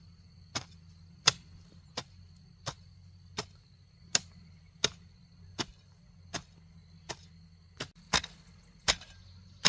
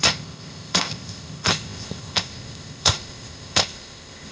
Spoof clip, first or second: second